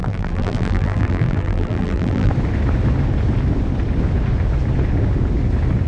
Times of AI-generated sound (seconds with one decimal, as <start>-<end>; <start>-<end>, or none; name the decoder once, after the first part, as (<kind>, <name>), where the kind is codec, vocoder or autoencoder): 0.0-2.3 (vocoder, BigVGAN v2)